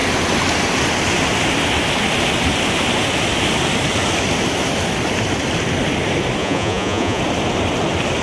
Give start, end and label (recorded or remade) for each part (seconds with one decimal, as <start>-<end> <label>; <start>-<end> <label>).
0.0-6.4 recorded; 6.4-7.2 remade; 7.2-8.2 recorded